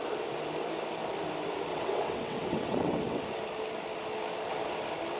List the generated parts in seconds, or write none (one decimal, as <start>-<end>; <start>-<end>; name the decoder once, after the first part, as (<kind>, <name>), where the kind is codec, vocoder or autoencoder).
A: 1.7-3.2 (vocoder, WaveNeXt)